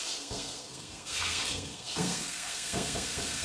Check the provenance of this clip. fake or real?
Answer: fake